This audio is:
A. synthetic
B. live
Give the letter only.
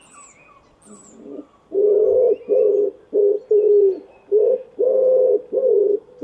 B